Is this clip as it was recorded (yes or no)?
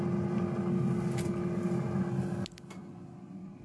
yes